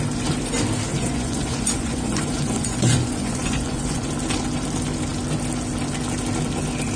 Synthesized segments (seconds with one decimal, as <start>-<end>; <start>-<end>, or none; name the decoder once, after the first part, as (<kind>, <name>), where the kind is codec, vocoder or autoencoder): 0.9-4.1 (vocoder, Vocos)